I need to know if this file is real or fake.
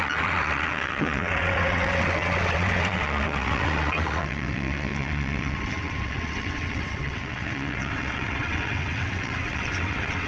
fake